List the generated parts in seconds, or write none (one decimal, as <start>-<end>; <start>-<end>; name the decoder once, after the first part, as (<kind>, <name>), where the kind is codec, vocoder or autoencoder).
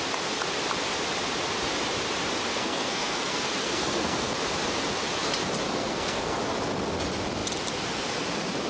2.5-4.3 (codec, SNAC); 5.7-6.4